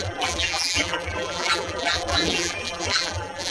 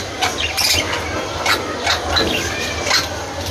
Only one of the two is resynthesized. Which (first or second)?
first